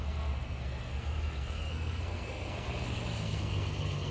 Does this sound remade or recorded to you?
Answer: remade